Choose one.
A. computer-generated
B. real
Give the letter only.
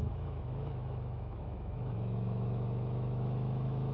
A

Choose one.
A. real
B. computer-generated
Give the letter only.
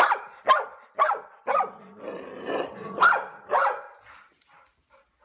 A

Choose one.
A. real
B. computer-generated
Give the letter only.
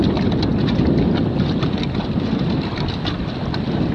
A